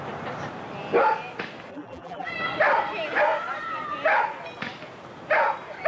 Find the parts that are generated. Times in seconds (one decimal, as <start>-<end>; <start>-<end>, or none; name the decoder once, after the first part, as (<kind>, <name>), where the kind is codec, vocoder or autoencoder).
1.7-2.3 (vocoder, BigVGAN v2)